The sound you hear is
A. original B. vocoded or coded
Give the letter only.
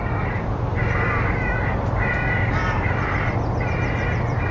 A